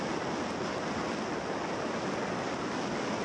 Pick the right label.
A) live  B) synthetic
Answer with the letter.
A